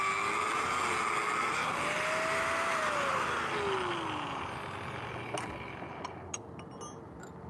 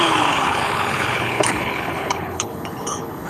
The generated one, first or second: second